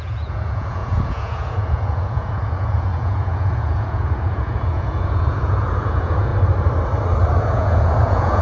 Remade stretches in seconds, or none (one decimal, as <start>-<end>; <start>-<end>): 0.0-6.3; 7.4-8.4